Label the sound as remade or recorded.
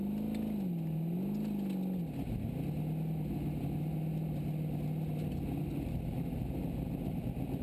recorded